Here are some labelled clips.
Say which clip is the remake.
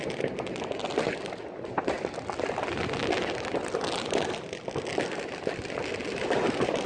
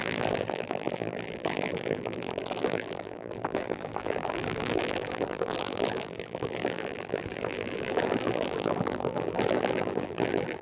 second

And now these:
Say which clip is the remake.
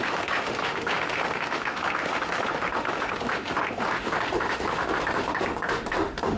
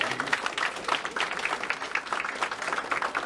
first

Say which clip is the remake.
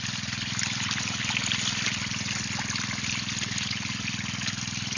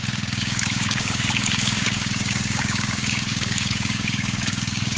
second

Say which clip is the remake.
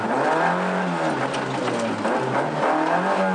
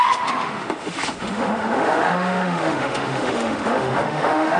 second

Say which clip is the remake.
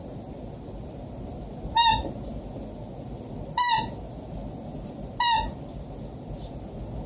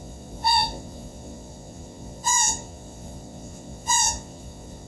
second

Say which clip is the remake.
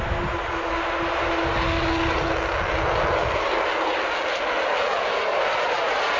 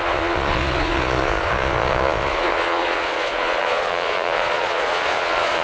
second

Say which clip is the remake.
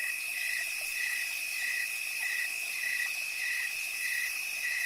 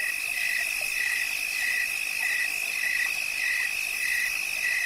first